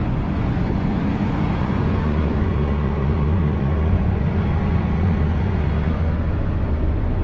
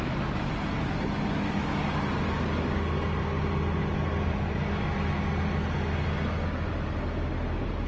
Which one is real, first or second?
second